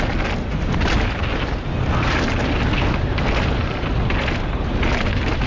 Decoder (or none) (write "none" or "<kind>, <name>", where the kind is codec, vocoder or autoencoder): none